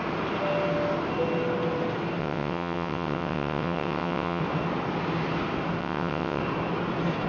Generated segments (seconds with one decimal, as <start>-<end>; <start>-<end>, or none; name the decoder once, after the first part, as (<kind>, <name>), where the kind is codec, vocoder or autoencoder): 2.2-4.4 (vocoder, WaveNeXt); 5.8-6.4

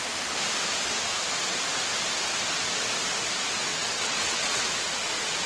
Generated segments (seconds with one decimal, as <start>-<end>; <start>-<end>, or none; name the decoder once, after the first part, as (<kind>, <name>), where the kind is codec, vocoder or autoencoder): 3.7-4.7 (vocoder, WaveNeXt)

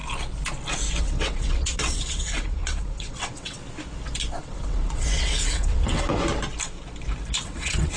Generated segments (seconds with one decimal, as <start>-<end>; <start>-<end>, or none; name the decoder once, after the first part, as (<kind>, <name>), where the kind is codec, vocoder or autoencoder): 1.0-3.6 (vocoder, WaveNeXt); 4.4-6.1; 7.4-8.0

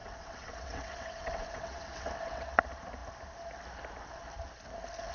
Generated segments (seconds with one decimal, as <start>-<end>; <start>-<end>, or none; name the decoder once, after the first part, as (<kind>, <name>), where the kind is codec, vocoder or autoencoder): 0.0-2.6 (vocoder, WaveNeXt)

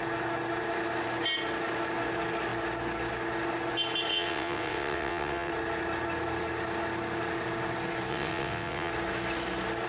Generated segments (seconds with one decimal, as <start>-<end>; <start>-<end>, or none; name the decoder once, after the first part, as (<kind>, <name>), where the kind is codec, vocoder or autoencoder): 4.1-5.5 (vocoder, WaveNeXt); 8.1-8.9